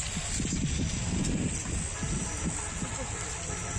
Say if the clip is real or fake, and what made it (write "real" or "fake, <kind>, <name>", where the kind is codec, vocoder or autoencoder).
real